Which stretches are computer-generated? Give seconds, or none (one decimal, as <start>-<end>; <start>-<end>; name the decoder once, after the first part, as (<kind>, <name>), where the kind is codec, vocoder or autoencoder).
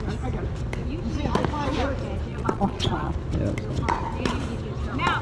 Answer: 2.3-3.1 (vocoder, Vocos)